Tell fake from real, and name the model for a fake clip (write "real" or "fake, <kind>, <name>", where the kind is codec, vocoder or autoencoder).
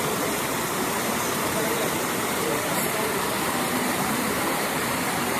fake, vocoder, BigVGAN v2